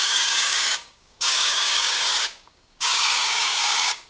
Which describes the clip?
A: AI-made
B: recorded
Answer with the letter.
A